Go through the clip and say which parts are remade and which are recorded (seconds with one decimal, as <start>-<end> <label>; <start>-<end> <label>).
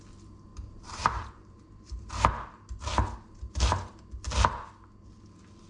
0.0-0.5 recorded; 0.5-2.1 remade; 2.1-5.7 recorded